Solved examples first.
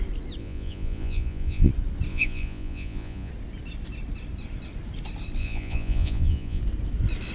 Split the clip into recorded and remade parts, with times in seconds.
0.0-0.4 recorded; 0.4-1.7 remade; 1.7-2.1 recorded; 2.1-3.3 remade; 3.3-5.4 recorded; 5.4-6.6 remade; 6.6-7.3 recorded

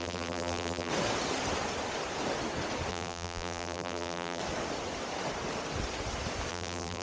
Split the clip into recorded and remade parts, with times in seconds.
0.0-0.9 remade; 0.9-2.9 recorded; 2.9-4.4 remade; 4.4-6.5 recorded; 6.5-7.0 remade

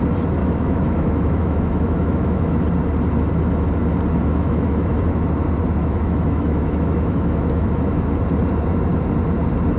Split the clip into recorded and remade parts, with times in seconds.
0.0-0.4 recorded; 0.4-2.6 remade; 2.6-4.3 recorded; 4.3-5.0 remade; 5.0-5.8 recorded; 5.8-8.1 remade; 8.1-9.8 recorded

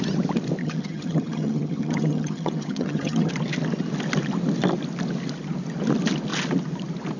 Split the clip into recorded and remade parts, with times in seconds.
0.0-0.6 recorded; 0.6-3.3 remade; 3.3-7.2 recorded